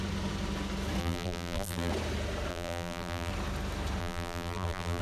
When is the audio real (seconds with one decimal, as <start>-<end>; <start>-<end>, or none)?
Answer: 0.0-1.0; 1.9-2.5; 3.3-4.0